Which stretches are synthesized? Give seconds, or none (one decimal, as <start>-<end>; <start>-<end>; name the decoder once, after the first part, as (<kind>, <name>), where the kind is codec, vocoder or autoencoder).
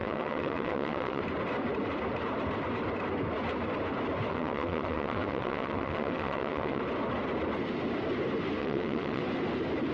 0.0-1.2 (vocoder, WaveNeXt); 4.3-6.8; 8.6-9.2